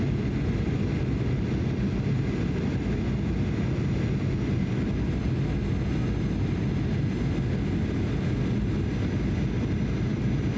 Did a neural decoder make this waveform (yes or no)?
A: no